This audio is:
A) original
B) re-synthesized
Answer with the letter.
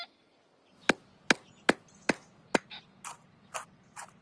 A